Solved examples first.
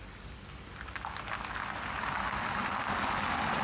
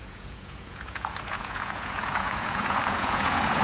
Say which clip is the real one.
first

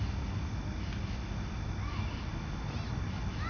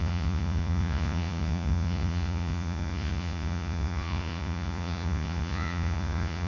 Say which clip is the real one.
first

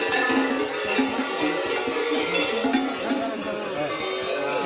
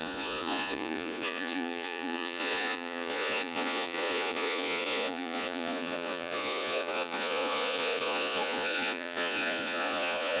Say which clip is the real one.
first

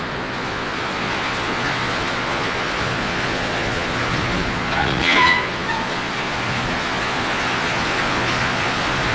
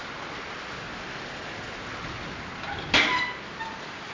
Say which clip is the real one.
second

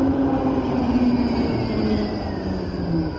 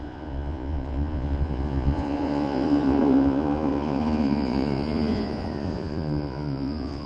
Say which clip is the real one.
first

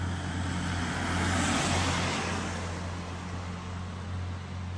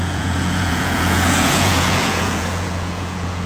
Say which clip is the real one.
first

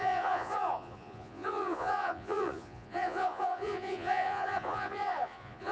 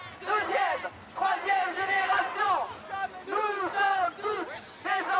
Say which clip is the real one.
second